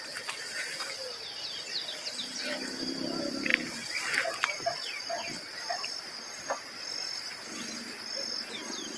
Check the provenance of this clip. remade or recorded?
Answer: recorded